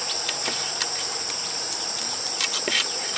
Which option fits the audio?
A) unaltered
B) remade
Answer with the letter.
B